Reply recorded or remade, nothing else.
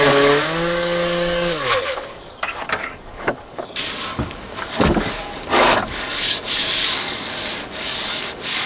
remade